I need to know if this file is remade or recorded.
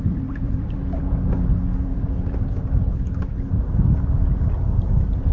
recorded